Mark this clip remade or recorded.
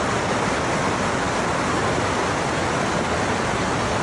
recorded